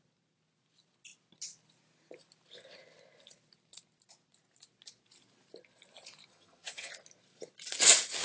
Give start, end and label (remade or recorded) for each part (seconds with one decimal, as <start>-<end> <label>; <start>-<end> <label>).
0.0-6.3 recorded; 6.3-6.9 remade; 6.9-8.2 recorded